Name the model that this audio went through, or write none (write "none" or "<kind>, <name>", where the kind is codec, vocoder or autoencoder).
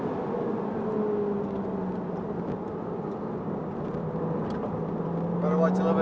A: none